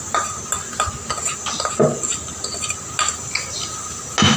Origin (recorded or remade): recorded